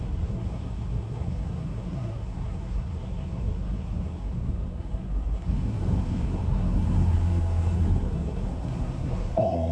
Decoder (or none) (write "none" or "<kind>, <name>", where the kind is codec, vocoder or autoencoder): codec, SNAC